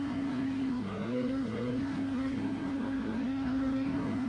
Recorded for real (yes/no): no